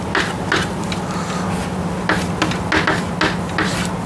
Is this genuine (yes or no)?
yes